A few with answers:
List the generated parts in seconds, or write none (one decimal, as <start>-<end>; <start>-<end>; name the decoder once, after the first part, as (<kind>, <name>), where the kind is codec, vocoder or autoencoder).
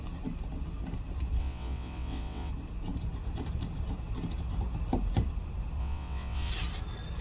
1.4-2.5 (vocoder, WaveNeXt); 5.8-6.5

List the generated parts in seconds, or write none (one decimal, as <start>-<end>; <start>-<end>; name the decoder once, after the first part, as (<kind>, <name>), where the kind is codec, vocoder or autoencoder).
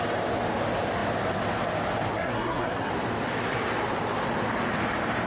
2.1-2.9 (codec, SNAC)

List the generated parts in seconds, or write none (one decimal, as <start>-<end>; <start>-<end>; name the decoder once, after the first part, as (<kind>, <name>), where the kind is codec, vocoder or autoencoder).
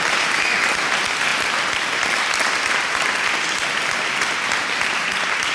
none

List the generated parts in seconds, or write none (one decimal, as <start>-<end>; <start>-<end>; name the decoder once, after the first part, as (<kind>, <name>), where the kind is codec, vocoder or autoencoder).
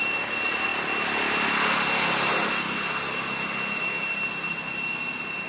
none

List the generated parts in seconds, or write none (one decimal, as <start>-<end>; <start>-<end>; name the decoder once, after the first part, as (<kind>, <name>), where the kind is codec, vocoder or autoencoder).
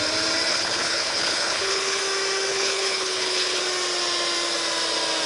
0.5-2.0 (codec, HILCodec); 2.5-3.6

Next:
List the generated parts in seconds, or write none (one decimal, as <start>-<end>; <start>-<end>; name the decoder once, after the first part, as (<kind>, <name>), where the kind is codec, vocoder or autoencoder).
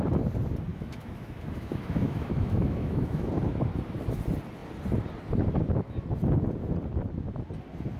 0.7-3.3 (autoencoder, DAC-VAE)